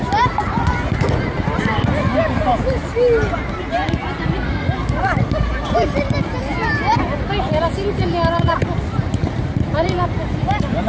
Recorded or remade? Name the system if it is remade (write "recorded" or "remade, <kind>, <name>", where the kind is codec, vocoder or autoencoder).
remade, vocoder, BigVGAN v2